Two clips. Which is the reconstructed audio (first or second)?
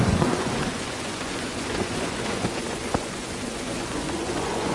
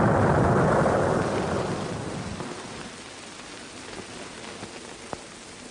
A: first